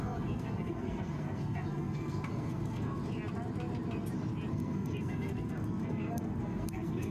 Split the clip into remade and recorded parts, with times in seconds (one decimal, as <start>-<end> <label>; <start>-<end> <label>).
0.0-3.0 remade; 3.0-4.5 recorded; 4.5-7.1 remade